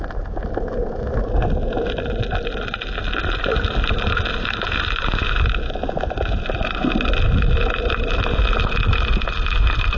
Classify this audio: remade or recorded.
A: recorded